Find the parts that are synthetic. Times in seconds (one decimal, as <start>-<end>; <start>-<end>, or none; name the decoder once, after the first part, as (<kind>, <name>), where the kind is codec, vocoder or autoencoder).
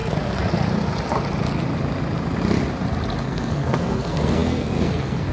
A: 3.2-5.3 (codec, SNAC)